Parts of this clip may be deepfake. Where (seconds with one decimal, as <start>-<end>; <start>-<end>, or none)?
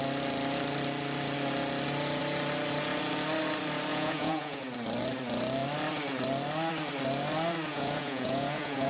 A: 3.9-4.6; 7.7-8.9